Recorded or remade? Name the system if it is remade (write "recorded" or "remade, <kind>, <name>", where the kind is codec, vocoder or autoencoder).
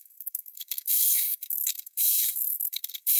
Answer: remade, codec, SNAC